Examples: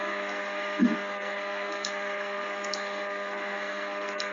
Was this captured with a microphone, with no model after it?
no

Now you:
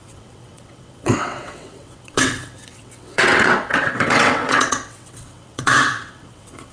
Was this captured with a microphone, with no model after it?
no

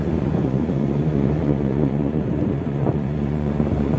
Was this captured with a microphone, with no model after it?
no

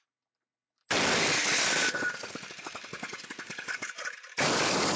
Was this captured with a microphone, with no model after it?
yes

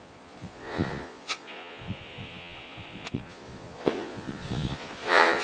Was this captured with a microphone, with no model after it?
no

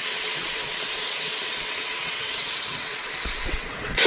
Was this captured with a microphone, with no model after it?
no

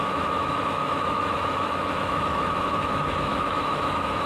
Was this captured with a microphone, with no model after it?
no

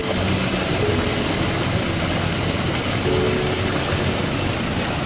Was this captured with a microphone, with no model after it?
yes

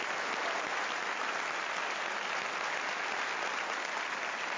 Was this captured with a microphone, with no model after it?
yes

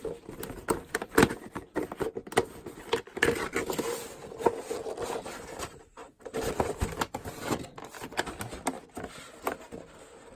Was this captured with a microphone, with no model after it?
yes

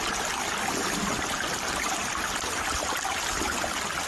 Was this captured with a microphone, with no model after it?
yes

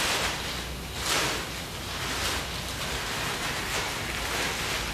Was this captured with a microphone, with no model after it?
yes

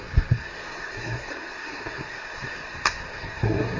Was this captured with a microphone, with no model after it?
no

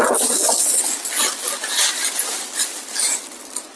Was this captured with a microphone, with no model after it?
yes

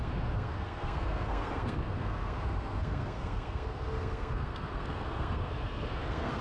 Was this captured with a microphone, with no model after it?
no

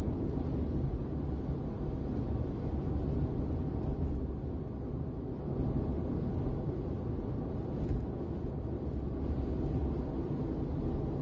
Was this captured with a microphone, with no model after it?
yes